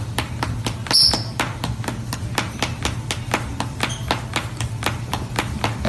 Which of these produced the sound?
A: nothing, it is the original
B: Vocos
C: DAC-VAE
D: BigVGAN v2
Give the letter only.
A